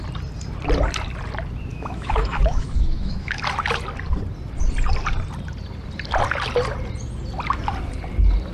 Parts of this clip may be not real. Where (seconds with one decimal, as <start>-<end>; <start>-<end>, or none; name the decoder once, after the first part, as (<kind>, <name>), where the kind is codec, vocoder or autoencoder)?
1.7-3.4 (autoencoder, DAC-VAE)